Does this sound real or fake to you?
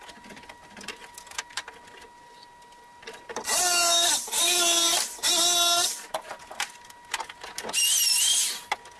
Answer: real